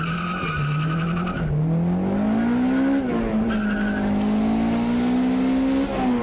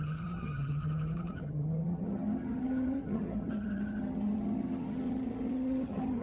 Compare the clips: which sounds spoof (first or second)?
second